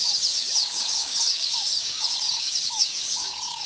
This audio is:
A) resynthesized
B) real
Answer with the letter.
A